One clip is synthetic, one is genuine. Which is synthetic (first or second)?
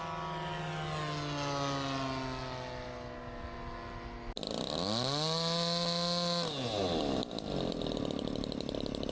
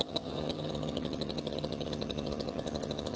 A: second